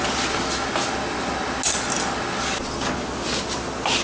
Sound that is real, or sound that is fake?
real